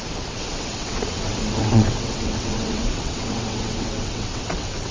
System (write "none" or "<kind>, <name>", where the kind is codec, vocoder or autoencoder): vocoder, WaveNeXt